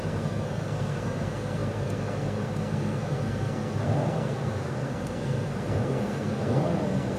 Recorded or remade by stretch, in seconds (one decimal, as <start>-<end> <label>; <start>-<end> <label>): 0.0-7.2 remade